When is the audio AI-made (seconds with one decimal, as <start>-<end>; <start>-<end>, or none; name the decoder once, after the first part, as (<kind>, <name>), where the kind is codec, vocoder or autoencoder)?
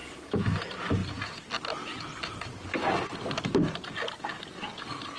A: 0.0-0.6 (autoencoder, DAC-VAE)